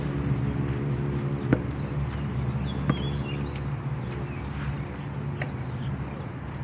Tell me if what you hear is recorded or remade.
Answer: recorded